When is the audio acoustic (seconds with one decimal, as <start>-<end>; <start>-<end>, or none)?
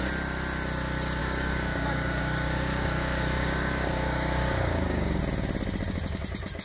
0.0-1.2; 5.2-6.6